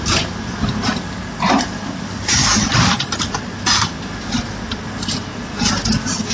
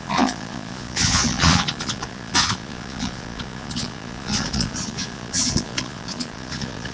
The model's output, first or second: second